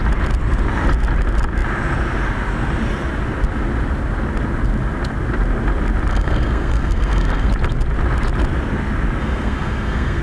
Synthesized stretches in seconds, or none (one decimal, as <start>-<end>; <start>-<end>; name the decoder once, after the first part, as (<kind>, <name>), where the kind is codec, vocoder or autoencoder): 6.1-7.5 (codec, SNAC); 9.2-10.2